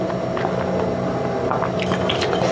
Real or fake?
real